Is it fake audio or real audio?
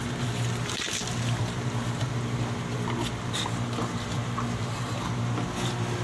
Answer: real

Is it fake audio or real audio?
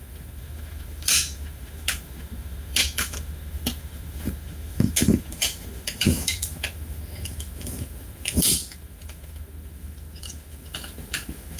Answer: fake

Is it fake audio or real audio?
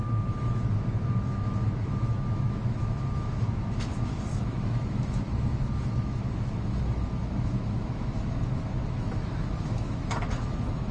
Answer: fake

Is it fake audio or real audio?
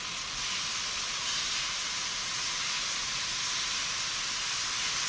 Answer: real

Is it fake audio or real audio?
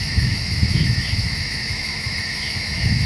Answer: fake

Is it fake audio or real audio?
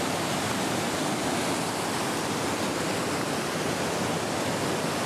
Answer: real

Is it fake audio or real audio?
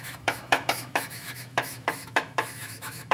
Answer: fake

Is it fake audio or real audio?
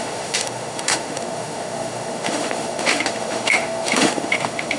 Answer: fake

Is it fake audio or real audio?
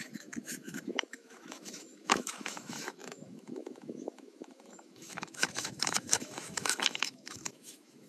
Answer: fake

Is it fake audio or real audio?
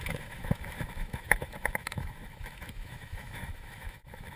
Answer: fake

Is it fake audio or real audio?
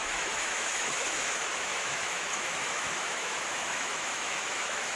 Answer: fake